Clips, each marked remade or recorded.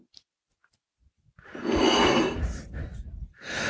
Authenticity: recorded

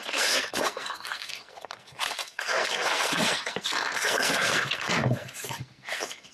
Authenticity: remade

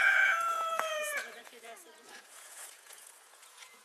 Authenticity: remade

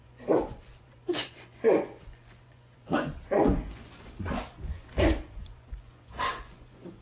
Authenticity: remade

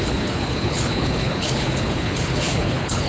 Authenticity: remade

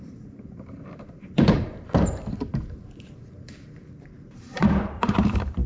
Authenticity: remade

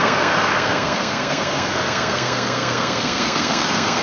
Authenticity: remade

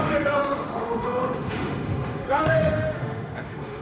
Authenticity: remade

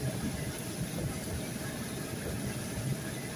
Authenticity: recorded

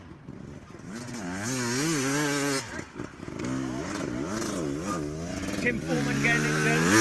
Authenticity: recorded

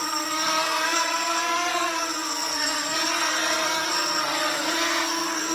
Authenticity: remade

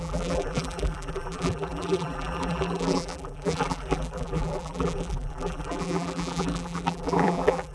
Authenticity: remade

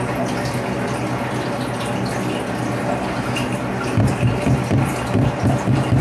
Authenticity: recorded